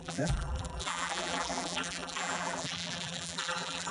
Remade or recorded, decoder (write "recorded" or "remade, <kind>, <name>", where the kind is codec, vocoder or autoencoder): remade, vocoder, BigVGAN v2